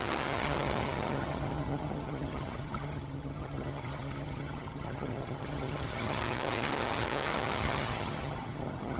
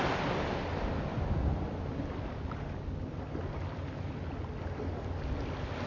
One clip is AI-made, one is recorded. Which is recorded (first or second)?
second